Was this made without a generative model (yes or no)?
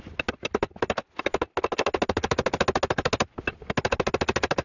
yes